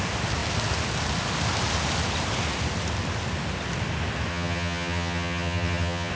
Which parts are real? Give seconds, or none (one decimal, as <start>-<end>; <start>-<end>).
0.0-4.3